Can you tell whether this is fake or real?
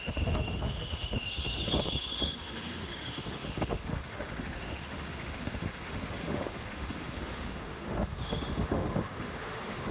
fake